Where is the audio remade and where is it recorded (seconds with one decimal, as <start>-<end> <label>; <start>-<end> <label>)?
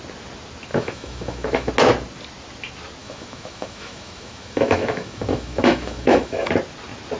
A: 0.0-0.7 recorded; 0.7-1.7 remade; 1.7-3.0 recorded; 3.0-6.5 remade; 6.5-7.2 recorded